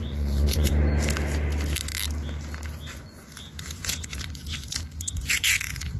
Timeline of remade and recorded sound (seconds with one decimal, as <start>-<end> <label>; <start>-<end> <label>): 0.0-0.7 remade; 0.7-2.9 recorded; 2.9-6.0 remade